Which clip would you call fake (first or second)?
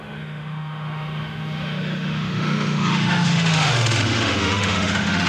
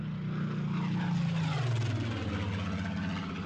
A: first